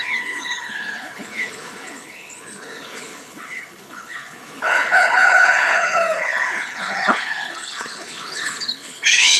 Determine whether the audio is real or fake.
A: fake